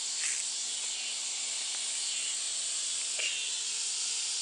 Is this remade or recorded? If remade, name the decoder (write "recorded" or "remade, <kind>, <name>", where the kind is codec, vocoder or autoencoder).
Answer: recorded